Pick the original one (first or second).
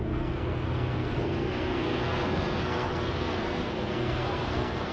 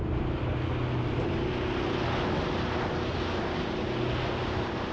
second